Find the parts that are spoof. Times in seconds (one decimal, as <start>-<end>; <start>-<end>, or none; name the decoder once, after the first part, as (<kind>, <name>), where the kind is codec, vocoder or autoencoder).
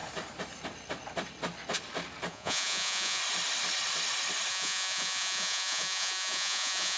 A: 2.3-3.2 (vocoder, Vocos); 4.5-7.0